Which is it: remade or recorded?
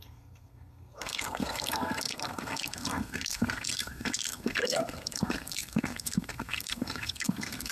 remade